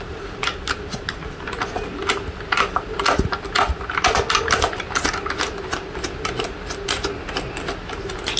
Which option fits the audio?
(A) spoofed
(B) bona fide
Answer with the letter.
B